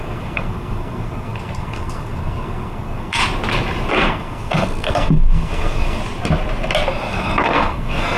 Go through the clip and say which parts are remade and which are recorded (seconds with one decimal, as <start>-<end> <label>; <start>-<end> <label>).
0.0-3.2 remade; 3.2-3.9 recorded; 3.9-6.0 remade; 6.0-7.1 recorded; 7.1-8.2 remade